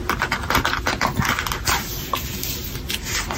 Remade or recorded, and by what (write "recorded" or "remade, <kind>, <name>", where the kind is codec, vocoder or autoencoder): recorded